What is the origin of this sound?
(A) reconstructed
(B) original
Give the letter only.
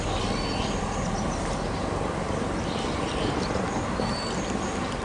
B